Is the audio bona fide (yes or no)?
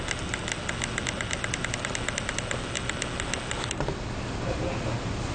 yes